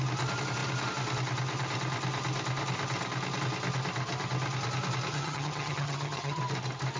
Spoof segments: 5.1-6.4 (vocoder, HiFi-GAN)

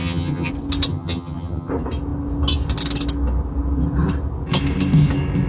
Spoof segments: 0.0-0.5 (vocoder, HiFi-GAN); 0.9-1.7